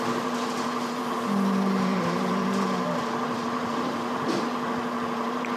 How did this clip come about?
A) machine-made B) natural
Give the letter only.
A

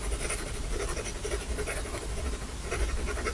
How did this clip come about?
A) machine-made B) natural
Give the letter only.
B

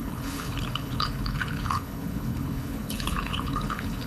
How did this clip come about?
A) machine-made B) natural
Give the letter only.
A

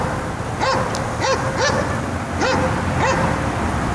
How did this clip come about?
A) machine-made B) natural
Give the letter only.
B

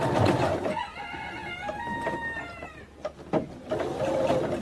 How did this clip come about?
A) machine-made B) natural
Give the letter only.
B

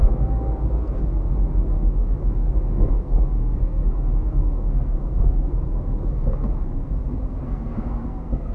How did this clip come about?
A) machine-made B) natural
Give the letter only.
A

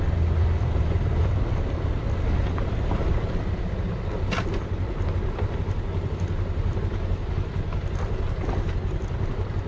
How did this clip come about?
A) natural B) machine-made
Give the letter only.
A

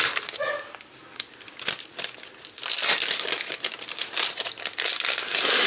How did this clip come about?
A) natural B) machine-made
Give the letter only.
A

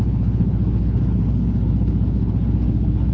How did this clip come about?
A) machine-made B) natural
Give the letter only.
A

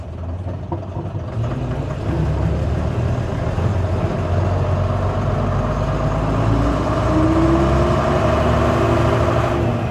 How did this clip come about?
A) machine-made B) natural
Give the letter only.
B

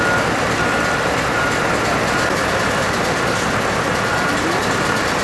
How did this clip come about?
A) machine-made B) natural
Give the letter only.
B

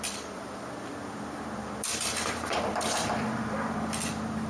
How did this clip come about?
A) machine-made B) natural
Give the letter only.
A